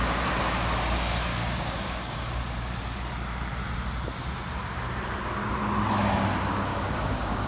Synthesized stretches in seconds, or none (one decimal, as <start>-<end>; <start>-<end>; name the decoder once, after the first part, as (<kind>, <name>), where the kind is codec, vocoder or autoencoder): 1.3-2.3 (codec, DAC); 6.7-7.5